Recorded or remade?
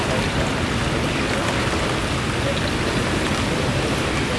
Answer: recorded